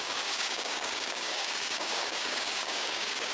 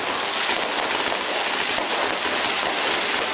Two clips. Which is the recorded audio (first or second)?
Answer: second